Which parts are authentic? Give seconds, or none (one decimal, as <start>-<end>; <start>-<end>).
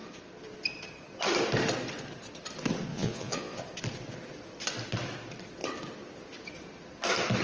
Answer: 0.0-2.9; 3.6-7.4